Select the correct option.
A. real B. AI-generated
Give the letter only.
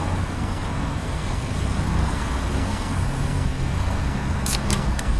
B